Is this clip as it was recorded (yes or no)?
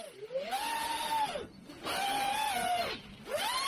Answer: yes